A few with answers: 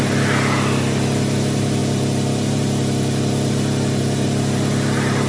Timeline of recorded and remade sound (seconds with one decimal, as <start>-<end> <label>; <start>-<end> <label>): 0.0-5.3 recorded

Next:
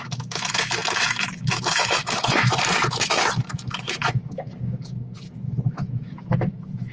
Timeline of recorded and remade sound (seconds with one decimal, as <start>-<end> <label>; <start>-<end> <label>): 0.0-6.9 remade

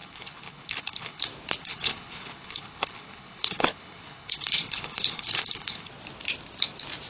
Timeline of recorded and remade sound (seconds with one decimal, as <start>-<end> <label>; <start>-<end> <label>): 0.0-1.2 remade; 1.2-1.6 recorded; 1.6-5.9 remade; 5.9-7.1 recorded

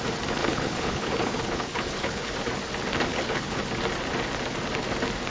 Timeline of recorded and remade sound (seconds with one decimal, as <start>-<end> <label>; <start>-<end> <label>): 0.0-0.4 recorded; 0.4-2.3 remade; 2.3-3.1 recorded; 3.1-3.6 remade; 3.6-5.3 recorded